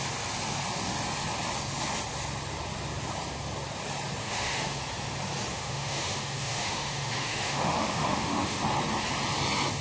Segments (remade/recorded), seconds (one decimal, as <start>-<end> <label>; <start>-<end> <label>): 0.0-4.2 recorded; 4.2-4.8 remade; 4.8-5.5 recorded; 5.5-8.6 remade; 8.6-9.8 recorded